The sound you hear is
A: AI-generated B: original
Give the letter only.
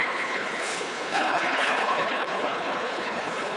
A